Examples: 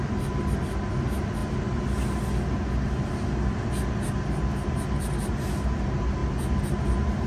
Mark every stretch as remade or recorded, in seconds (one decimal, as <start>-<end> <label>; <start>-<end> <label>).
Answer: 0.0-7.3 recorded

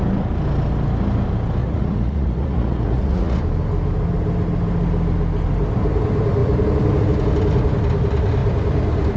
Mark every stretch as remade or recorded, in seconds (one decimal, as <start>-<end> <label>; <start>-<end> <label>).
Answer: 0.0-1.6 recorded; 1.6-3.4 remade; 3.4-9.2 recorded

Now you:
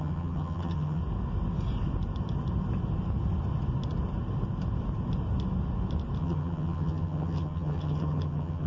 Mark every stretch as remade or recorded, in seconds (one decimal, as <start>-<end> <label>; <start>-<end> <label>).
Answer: 0.0-1.0 remade; 1.0-6.2 recorded; 6.2-8.7 remade

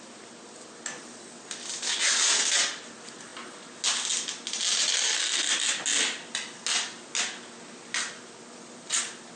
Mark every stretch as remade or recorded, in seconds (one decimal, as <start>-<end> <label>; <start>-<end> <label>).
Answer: 0.0-9.4 recorded

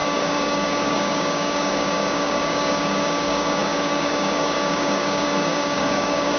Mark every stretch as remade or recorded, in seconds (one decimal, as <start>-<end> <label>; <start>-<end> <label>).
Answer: 0.0-6.4 remade